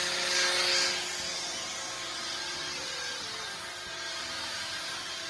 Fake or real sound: real